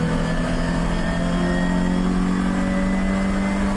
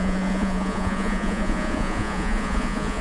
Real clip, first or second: first